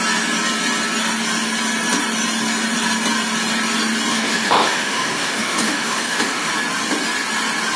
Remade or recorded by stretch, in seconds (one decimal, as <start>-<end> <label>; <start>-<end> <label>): 0.0-4.1 recorded; 4.1-6.5 remade; 6.5-7.8 recorded